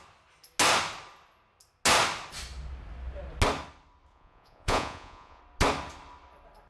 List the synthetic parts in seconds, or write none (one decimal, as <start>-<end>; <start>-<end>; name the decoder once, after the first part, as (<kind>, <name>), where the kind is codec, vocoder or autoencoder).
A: 4.1-5.4 (vocoder, Vocos)